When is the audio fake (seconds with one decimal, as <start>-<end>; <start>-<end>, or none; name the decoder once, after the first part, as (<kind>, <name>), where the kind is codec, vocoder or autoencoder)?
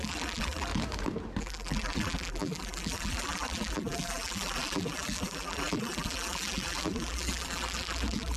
0.0-0.7 (vocoder, BigVGAN v2); 1.4-8.4